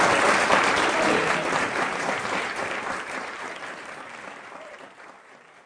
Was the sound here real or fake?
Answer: fake